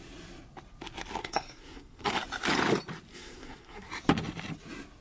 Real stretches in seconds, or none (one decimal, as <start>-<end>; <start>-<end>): 0.0-1.2; 2.1-3.1; 3.9-5.0